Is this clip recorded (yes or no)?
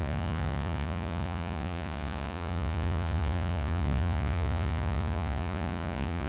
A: no